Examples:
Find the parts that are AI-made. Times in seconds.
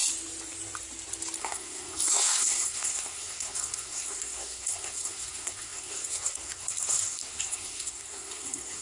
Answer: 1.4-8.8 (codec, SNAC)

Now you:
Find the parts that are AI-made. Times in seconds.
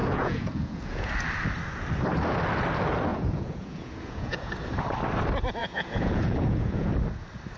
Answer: 0.0-1.1 (vocoder, Vocos); 3.1-4.5; 5.6-6.9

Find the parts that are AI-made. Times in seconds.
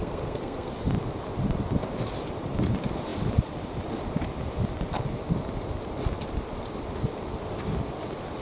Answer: 0.0-0.7 (codec, SNAC)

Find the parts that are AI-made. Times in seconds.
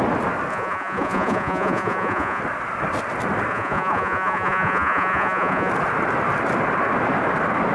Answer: 0.5-2.4 (vocoder, Vocos); 3.5-5.7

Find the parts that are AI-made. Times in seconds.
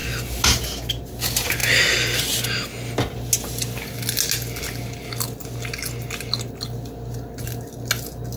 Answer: none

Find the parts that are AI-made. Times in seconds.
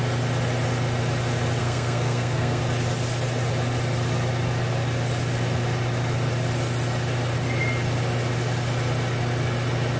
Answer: 1.6-2.6 (codec, SNAC)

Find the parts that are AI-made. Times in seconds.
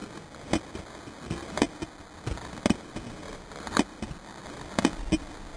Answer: none